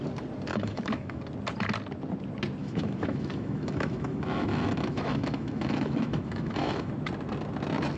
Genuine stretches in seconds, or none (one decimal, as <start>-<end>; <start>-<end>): 0.0-0.5; 1.2-2.6; 6.9-8.0